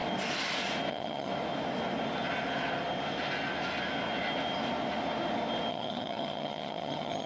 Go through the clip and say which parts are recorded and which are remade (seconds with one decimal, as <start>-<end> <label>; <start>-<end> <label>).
0.0-0.9 recorded; 0.9-1.3 remade; 1.3-5.7 recorded; 5.7-7.3 remade